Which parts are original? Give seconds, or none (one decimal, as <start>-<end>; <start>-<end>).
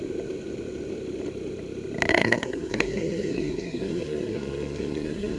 0.0-2.1